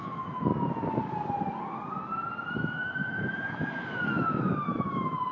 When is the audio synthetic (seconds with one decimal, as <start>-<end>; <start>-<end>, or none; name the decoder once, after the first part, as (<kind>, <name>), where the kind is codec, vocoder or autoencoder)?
0.0-0.5 (autoencoder, DAC-VAE); 2.5-5.3